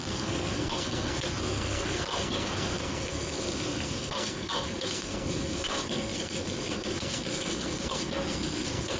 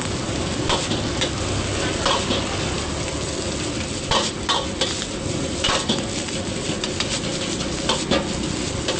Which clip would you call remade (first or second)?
first